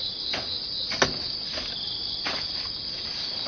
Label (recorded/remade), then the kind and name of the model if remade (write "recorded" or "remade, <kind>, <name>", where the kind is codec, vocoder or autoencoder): remade, vocoder, BigVGAN v2